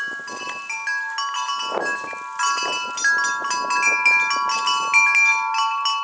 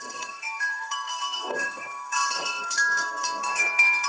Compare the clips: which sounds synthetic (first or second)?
second